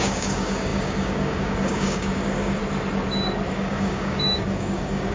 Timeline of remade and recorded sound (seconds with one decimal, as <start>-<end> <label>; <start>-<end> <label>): 0.0-2.6 remade; 2.6-3.5 recorded; 3.5-5.1 remade